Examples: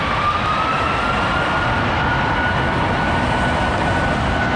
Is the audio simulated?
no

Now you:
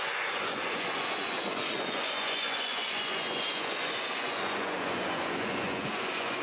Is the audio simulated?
yes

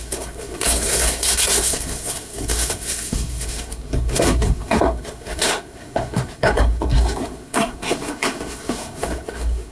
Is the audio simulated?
yes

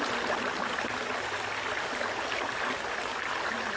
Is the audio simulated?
yes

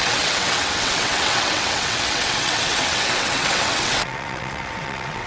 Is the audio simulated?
yes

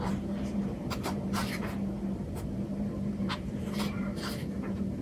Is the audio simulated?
yes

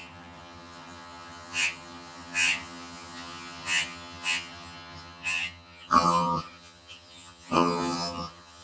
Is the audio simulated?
yes